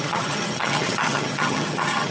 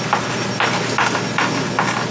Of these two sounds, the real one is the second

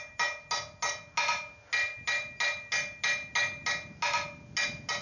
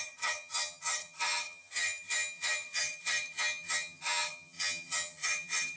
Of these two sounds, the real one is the first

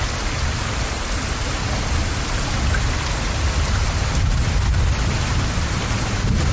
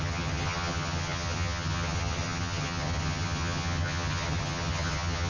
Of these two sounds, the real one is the first